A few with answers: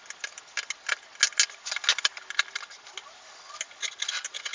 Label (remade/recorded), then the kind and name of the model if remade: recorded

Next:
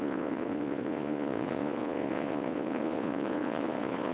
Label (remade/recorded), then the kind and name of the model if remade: remade, vocoder, Vocos